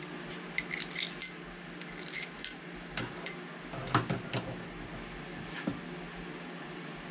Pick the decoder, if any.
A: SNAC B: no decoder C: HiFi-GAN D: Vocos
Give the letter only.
B